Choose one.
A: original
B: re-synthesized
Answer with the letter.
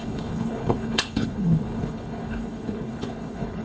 B